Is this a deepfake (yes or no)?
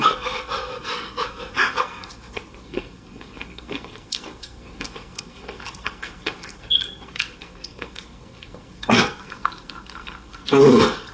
yes